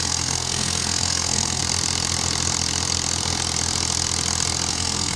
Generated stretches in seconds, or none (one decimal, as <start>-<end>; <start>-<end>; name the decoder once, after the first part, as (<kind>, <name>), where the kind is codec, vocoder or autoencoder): 0.0-1.6 (codec, SNAC); 4.7-5.2